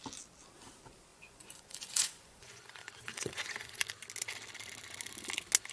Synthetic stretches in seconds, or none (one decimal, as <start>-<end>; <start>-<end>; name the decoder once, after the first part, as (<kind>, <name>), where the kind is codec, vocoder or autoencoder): 1.1-3.8 (vocoder, Vocos)